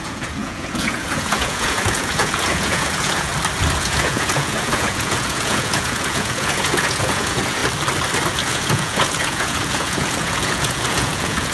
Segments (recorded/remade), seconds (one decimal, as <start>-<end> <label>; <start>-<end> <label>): 0.0-3.3 remade; 3.3-3.8 recorded; 3.8-7.6 remade; 7.6-8.3 recorded; 8.3-11.5 remade

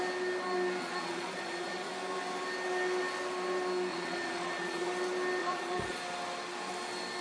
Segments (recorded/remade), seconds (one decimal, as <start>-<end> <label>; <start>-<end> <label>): 0.0-0.8 recorded; 0.8-1.9 remade; 1.9-3.9 recorded; 3.9-4.9 remade; 4.9-5.4 recorded; 5.4-6.0 remade; 6.0-7.2 recorded

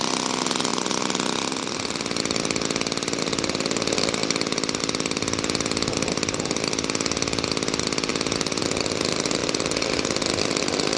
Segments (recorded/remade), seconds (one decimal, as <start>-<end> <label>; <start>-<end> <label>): 0.0-11.0 recorded

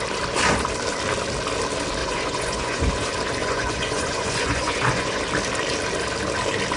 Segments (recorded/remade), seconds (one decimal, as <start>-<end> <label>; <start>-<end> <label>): 0.0-2.0 recorded; 2.0-2.9 remade; 2.9-3.4 recorded; 3.4-5.2 remade; 5.2-6.8 recorded

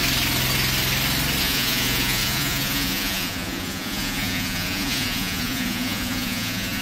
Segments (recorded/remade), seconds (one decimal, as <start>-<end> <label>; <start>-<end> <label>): 0.0-1.4 recorded; 1.4-6.8 remade

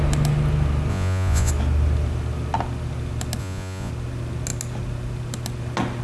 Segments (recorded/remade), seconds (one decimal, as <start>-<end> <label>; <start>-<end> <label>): 0.0-0.9 recorded; 0.9-1.5 remade; 1.5-3.4 recorded; 3.4-3.9 remade; 3.9-6.0 recorded